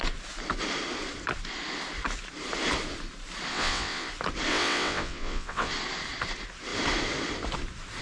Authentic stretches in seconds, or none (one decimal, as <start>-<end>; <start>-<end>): 0.0-3.5; 4.1-4.5; 5.7-8.0